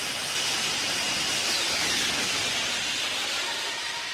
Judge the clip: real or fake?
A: real